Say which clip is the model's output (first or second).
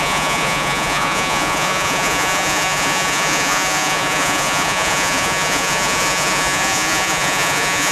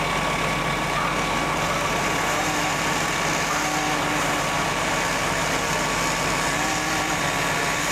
first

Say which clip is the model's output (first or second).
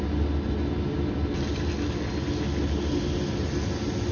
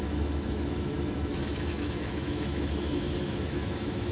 second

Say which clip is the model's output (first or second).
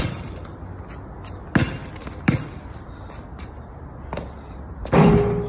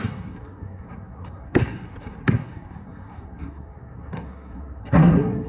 second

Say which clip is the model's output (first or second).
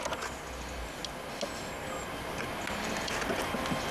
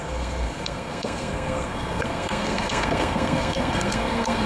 second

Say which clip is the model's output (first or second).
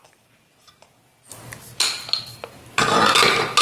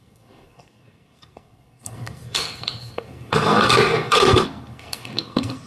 second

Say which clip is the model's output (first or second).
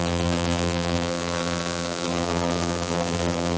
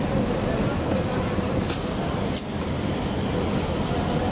first